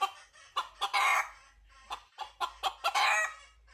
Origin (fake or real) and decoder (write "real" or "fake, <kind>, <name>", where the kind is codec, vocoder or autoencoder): real